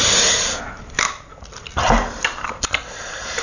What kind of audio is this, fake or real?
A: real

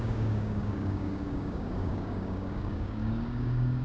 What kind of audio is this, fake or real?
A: fake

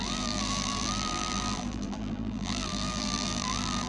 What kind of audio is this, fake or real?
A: fake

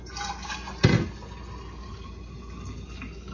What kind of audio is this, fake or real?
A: real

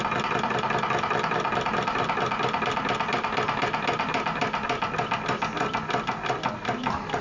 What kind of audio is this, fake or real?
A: real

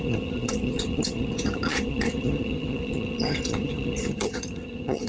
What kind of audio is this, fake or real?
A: fake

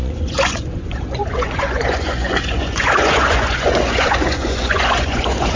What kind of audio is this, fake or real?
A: fake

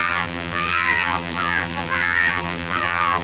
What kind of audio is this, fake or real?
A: fake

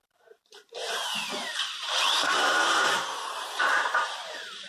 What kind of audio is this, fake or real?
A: fake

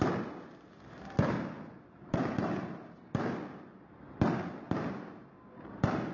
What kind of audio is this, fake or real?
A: fake